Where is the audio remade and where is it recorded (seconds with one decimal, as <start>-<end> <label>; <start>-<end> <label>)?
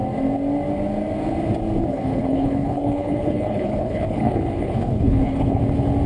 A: 0.0-1.9 recorded; 1.9-5.6 remade; 5.6-6.1 recorded